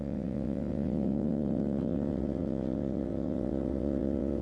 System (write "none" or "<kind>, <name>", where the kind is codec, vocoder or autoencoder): vocoder, WaveNeXt